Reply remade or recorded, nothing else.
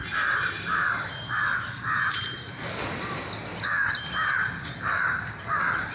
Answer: remade